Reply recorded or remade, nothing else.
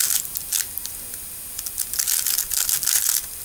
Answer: recorded